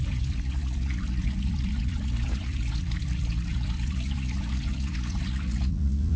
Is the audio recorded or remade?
remade